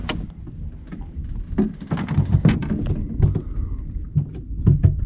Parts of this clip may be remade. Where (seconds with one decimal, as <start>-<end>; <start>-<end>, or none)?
none